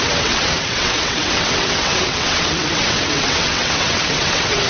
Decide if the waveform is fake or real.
fake